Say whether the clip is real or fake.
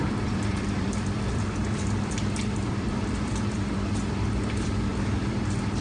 fake